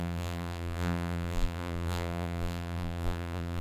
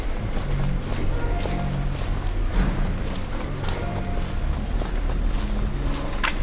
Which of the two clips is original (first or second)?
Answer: second